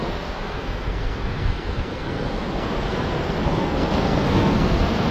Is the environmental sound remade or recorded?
remade